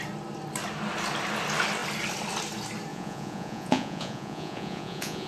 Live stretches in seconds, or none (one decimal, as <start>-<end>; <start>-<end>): 0.0-2.9